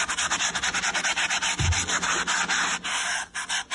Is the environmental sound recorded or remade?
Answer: recorded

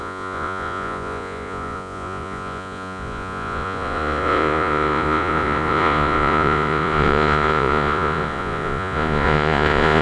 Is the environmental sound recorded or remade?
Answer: remade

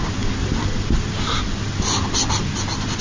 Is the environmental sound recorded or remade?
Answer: recorded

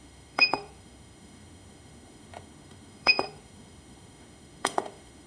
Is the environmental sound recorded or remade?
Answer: remade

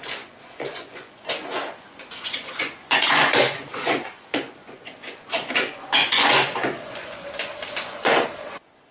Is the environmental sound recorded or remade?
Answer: remade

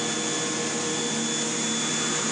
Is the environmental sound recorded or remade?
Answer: recorded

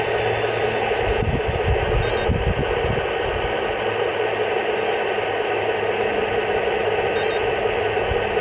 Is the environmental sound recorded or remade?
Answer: recorded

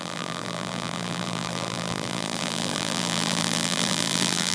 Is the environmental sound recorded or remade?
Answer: remade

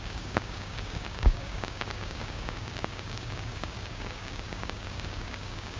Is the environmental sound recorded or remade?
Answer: remade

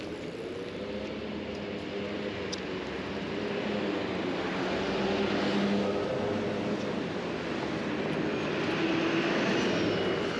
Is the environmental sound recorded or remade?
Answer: recorded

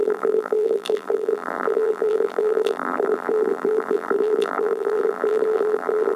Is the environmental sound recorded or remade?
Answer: remade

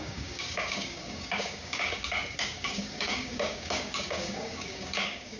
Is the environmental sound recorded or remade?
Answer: remade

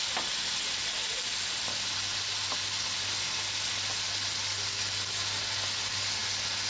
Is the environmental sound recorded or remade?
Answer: recorded